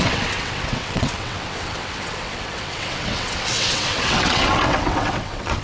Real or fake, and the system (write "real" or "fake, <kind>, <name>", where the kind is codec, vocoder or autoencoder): fake, vocoder, WaveNeXt